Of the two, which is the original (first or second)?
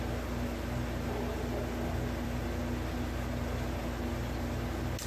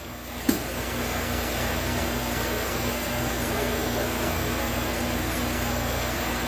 first